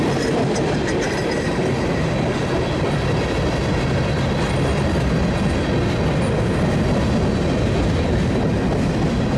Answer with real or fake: real